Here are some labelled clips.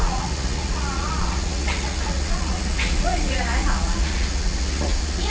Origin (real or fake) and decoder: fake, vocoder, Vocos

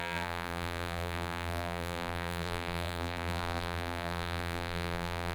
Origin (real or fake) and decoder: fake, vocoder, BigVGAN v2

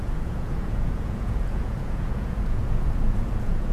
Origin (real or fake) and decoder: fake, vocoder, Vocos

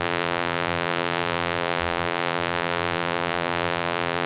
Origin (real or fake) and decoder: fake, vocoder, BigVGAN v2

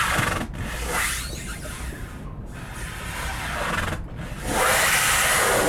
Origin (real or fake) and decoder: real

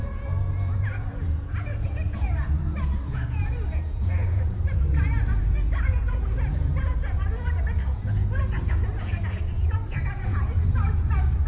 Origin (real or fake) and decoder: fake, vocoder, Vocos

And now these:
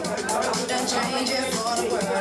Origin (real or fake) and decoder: real